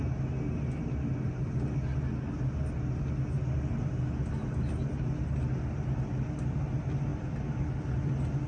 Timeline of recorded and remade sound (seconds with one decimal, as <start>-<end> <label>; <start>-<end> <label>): 0.0-8.5 recorded